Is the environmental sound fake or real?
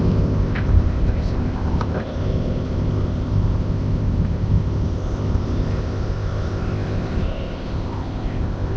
fake